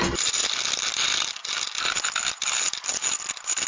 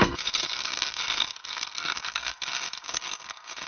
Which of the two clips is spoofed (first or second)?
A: second